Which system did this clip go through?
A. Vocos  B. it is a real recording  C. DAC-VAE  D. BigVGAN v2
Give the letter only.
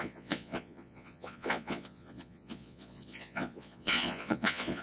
A